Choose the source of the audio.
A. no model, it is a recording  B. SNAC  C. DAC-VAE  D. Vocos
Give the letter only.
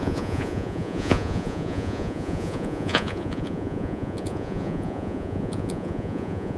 D